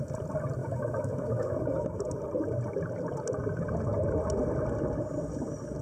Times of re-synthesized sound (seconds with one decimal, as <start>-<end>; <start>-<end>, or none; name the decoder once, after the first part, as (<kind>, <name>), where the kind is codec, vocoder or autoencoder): 0.6-2.0 (autoencoder, DAC-VAE)